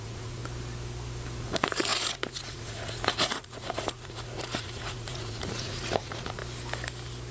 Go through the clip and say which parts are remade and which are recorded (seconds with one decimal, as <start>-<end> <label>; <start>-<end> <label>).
0.0-0.4 remade; 0.4-1.4 recorded; 1.4-6.4 remade; 6.4-7.3 recorded